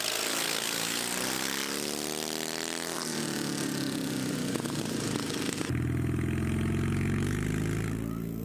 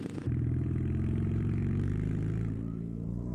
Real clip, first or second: first